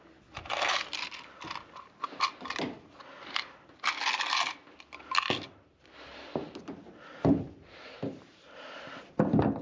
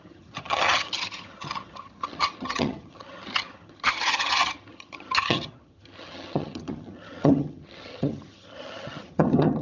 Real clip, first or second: first